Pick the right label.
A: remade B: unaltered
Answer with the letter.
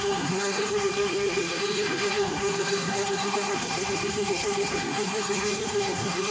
A